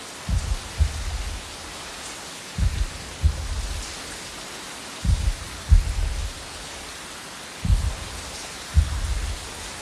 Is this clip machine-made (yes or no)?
no